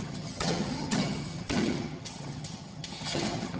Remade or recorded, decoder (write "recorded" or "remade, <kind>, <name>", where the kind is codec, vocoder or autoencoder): remade, vocoder, HiFi-GAN